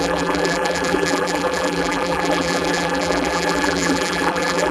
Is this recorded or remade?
remade